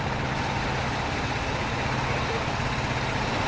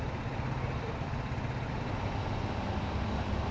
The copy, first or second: second